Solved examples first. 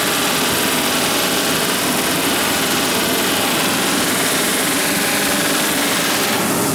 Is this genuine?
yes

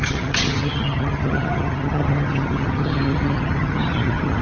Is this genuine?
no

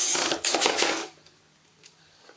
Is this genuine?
no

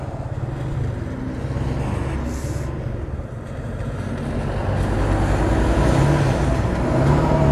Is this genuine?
yes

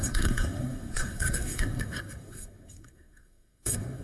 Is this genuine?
no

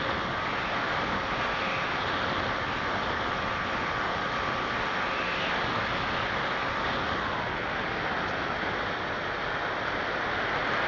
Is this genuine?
yes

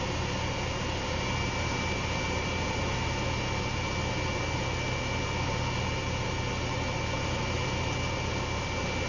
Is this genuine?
yes